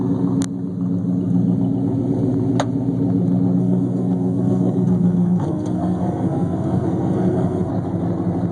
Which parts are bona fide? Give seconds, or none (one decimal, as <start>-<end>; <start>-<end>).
0.0-3.6; 7.7-8.5